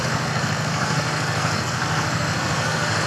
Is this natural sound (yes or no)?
no